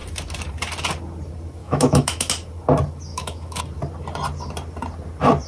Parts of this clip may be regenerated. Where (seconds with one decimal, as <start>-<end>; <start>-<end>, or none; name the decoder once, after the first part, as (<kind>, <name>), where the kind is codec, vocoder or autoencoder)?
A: 1.6-2.3 (autoencoder, DAC-VAE); 3.1-3.6